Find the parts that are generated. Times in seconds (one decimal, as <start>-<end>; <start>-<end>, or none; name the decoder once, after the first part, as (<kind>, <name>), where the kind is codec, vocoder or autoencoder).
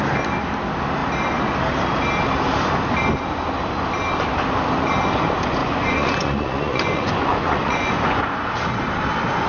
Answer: 5.6-8.5 (vocoder, Vocos)